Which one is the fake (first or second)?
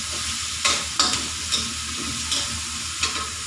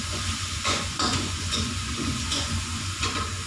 second